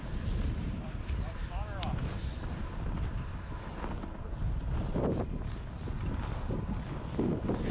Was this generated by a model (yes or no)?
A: no